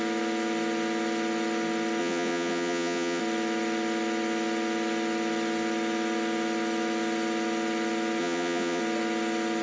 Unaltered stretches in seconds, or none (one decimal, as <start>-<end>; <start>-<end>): 0.0-2.0; 3.2-8.2; 8.8-9.6